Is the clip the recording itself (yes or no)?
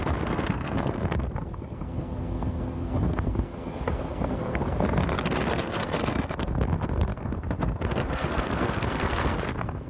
no